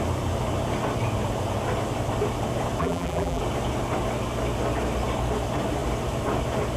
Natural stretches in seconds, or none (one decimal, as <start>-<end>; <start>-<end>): 0.0-2.8; 3.4-6.8